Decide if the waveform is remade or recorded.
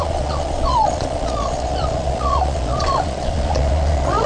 remade